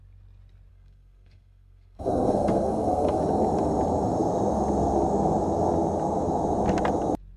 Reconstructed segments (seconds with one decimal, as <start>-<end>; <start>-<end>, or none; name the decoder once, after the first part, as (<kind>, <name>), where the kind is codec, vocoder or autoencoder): 0.7-3.2 (codec, SNAC)